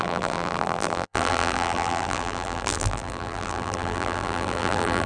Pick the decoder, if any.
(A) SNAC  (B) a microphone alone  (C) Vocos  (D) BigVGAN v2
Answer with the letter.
D